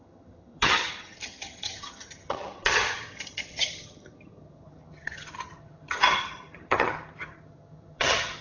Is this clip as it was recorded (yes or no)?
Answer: no